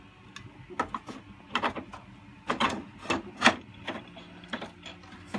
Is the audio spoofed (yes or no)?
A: no